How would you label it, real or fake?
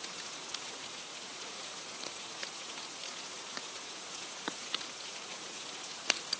fake